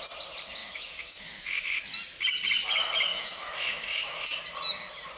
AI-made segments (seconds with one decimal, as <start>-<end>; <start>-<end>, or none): 0.6-1.8; 3.1-4.4